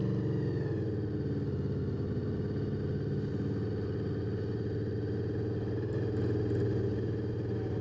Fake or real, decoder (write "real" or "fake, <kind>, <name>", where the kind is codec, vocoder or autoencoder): real